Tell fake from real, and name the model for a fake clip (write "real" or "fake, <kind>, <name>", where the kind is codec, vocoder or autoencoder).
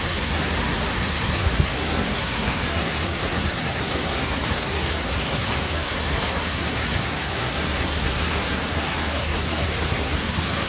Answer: fake, codec, SNAC